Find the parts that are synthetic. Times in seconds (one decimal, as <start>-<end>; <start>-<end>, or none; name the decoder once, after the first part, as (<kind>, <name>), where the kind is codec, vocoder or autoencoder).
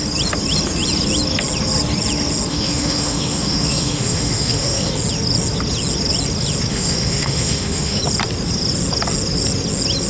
2.5-4.9 (autoencoder, DAC-VAE); 6.7-8.0